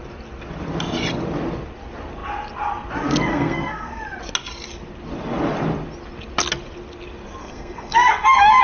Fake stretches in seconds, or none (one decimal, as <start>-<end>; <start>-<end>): 3.3-4.0; 7.4-8.6

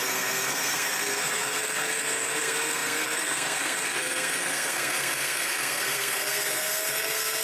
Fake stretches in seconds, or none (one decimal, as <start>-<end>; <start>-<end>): 0.0-7.4

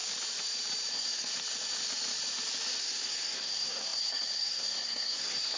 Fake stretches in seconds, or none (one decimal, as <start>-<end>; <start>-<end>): 0.9-1.3; 2.8-5.6

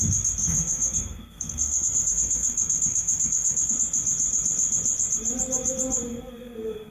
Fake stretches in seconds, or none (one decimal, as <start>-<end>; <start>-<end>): 0.4-3.7; 6.1-6.9

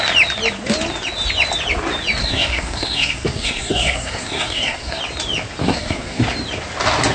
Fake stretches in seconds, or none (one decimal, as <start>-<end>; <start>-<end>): 2.2-5.0; 5.6-6.2